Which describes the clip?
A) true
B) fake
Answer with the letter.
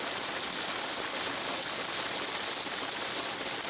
A